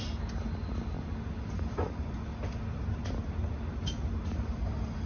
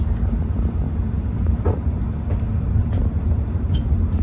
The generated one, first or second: second